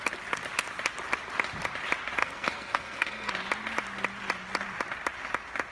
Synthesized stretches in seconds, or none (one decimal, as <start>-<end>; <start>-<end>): 2.2-3.3